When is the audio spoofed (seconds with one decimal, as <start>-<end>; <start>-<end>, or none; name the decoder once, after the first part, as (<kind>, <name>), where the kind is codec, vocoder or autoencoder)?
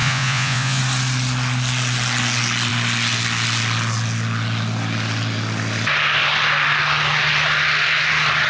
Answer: 0.0-0.8 (vocoder, Vocos)